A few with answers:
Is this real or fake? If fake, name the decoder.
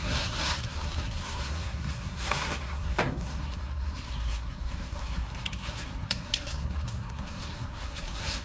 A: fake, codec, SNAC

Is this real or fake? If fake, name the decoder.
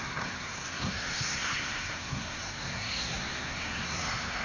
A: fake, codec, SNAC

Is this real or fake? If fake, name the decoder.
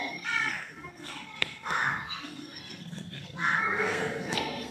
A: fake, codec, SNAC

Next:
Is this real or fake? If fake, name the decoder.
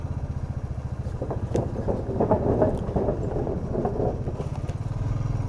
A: real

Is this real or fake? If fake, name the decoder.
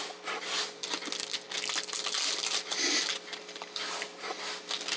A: real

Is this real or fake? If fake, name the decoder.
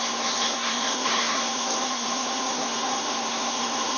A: fake, codec, SNAC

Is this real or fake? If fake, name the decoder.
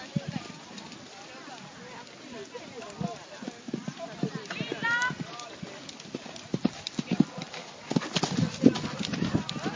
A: real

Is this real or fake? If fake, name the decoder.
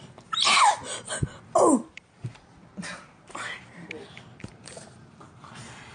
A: real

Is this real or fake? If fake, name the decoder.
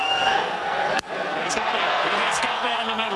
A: fake, codec, SNAC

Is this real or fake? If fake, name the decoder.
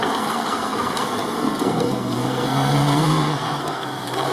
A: fake, codec, SNAC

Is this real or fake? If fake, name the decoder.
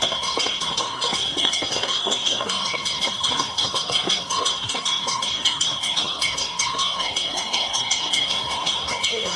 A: fake, codec, SNAC